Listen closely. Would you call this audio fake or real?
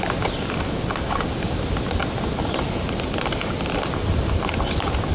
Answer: real